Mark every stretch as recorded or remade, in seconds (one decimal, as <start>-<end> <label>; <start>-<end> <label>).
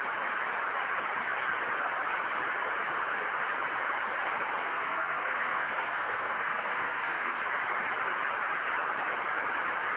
0.0-4.6 recorded; 4.6-7.4 remade; 7.4-10.0 recorded